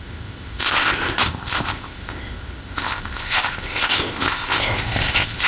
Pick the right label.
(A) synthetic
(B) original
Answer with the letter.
A